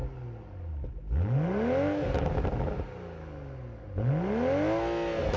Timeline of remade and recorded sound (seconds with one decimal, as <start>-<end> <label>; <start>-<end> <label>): 0.0-5.4 recorded